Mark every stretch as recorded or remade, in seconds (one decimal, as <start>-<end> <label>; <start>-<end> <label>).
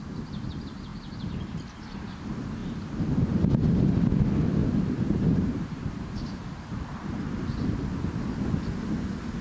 0.0-0.9 recorded; 0.9-2.1 remade; 2.1-2.6 recorded; 2.6-3.5 remade; 3.5-4.6 recorded; 4.6-7.2 remade; 7.2-9.4 recorded